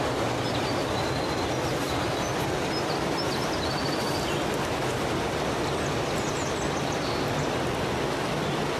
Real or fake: real